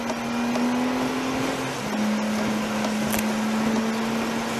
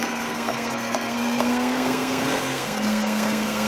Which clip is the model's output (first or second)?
second